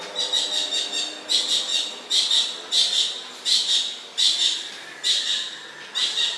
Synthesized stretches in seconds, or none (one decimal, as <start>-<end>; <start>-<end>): none